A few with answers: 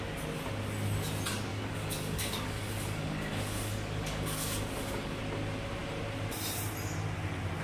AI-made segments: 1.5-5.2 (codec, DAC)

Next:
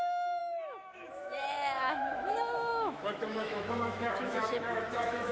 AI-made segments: 0.0-5.3 (autoencoder, DAC-VAE)

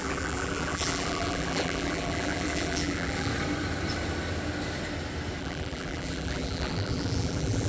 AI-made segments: 0.0-3.3 (vocoder, BigVGAN v2); 5.4-7.7

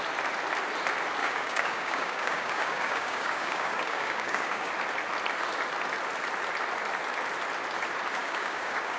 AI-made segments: 1.2-4.7 (codec, DAC); 8.2-9.0

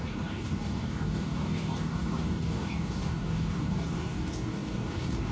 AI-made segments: 0.0-5.3 (codec, DAC)